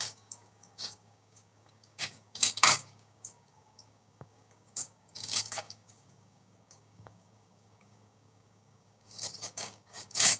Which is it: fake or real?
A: fake